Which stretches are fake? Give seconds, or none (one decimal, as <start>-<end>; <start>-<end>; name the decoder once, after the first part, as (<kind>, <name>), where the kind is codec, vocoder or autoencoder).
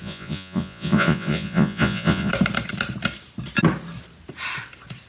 0.0-2.3 (vocoder, Vocos)